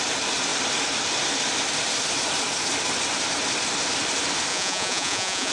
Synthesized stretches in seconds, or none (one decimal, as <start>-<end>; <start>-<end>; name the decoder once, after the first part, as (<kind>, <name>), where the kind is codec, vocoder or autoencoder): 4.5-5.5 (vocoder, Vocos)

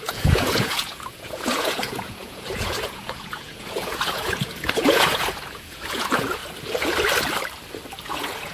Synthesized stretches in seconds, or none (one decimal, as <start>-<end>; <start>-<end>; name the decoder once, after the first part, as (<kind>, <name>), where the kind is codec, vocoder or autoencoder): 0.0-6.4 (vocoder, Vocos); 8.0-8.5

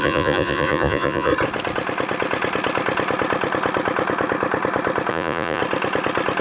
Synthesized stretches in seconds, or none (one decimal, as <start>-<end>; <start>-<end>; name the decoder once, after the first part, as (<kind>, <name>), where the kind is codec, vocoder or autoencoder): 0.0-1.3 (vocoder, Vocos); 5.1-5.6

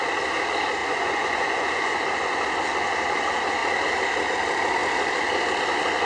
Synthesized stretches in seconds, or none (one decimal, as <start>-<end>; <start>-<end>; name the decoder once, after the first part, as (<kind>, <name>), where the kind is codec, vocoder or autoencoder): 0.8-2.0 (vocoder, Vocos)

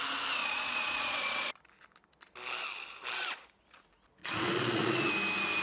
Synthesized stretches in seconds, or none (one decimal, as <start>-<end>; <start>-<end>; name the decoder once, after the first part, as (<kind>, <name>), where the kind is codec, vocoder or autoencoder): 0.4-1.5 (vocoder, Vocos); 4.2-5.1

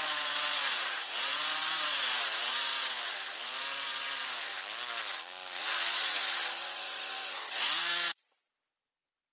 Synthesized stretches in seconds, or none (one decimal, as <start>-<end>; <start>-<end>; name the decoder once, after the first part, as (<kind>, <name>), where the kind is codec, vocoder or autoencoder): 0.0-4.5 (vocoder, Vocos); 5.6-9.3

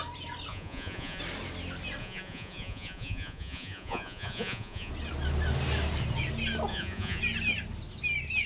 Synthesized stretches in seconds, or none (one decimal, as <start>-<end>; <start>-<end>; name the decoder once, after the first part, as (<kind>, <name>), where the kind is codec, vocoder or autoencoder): 0.5-1.2 (vocoder, Vocos); 2.0-4.9; 6.7-7.2